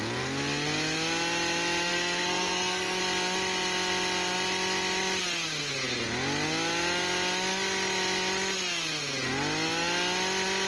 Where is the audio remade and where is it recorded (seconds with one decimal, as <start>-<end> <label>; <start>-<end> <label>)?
0.0-1.9 recorded; 1.9-3.0 remade; 3.0-10.7 recorded